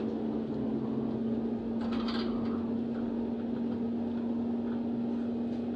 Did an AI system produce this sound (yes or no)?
no